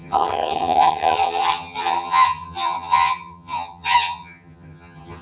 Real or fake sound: fake